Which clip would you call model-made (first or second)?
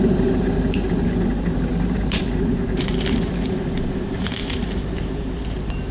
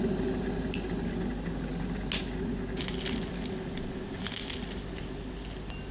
first